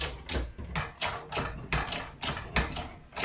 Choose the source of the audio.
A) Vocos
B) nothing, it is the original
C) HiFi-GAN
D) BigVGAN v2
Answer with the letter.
B